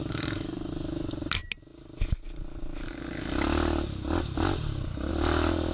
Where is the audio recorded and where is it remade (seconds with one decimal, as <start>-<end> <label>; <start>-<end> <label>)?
0.0-0.7 remade; 0.7-5.7 recorded